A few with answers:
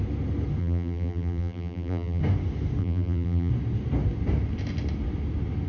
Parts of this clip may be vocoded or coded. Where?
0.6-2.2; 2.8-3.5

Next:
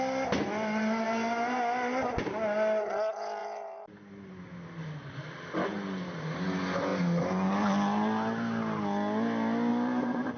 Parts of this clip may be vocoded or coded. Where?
3.4-4.3; 9.7-10.4

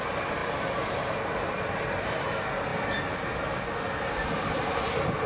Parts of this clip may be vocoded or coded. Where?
0.4-1.5